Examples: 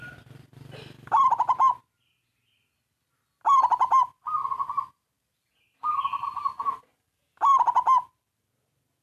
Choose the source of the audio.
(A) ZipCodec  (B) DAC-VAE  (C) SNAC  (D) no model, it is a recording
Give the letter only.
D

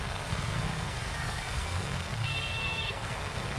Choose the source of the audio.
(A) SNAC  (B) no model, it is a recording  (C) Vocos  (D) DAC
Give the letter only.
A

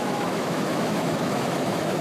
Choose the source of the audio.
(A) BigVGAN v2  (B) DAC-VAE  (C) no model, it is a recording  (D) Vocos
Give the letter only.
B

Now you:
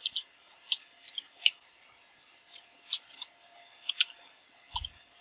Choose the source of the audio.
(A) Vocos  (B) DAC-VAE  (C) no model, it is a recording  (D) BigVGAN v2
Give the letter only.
C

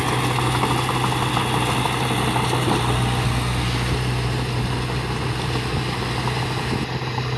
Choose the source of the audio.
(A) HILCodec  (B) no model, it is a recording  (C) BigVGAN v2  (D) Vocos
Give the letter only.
B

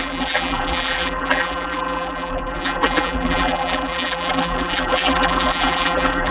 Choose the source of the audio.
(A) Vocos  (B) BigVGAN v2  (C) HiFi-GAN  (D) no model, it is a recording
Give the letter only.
B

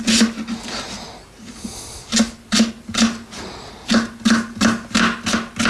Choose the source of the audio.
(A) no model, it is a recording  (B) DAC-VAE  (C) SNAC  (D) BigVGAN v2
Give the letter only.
A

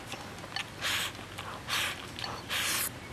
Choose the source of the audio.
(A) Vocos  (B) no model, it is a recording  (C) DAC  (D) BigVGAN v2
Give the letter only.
B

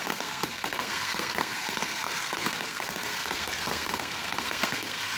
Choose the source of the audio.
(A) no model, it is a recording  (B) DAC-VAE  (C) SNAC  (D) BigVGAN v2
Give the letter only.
C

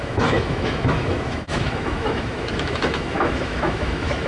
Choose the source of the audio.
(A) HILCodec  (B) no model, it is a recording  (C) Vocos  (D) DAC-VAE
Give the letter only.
D